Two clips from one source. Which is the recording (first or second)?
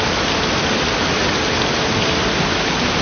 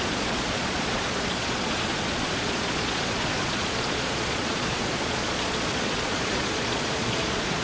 first